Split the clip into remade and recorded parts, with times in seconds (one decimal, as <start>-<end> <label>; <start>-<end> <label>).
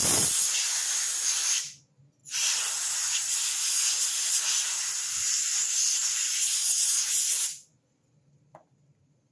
0.0-9.3 recorded